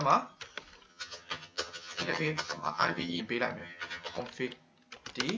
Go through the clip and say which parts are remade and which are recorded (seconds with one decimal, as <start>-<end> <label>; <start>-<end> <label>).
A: 0.0-0.9 recorded; 0.9-3.2 remade; 3.2-3.6 recorded; 3.6-4.2 remade; 4.2-5.4 recorded